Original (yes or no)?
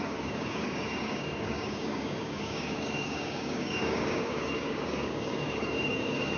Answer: no